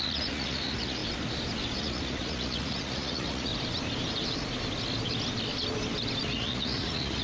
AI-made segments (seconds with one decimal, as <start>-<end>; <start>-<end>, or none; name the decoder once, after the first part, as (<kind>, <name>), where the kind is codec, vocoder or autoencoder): 0.0-1.0 (vocoder, Vocos); 1.8-3.5; 6.2-7.2